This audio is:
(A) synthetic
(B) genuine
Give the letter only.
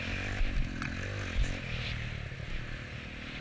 B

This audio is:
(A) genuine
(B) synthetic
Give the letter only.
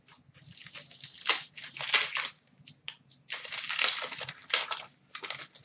A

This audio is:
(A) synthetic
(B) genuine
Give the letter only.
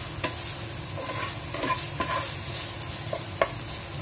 B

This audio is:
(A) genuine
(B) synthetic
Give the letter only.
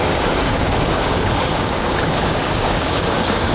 B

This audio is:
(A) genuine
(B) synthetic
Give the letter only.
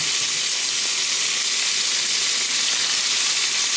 A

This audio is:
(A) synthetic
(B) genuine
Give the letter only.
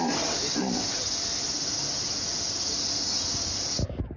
B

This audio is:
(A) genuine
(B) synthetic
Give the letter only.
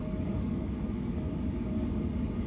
B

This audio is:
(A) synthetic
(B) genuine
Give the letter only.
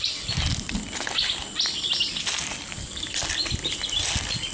B